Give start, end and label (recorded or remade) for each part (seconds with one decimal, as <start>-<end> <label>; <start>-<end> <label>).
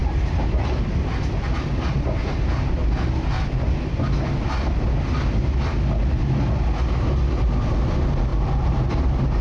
0.0-0.9 remade; 0.9-8.3 recorded; 8.3-8.9 remade; 8.9-9.4 recorded